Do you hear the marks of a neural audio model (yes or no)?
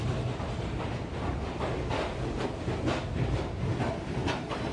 no